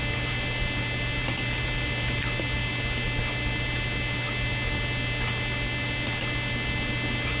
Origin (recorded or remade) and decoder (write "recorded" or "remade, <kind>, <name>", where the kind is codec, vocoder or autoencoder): recorded